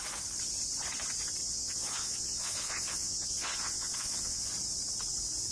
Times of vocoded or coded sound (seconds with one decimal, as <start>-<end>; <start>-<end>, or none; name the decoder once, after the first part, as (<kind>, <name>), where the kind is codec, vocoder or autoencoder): 1.4-4.5 (vocoder, Vocos)